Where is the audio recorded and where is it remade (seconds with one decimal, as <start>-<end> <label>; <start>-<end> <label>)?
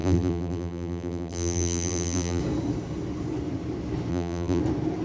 0.0-2.4 remade; 2.4-4.1 recorded; 4.1-4.6 remade; 4.6-5.0 recorded